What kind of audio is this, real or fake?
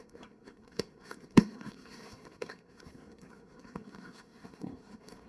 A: fake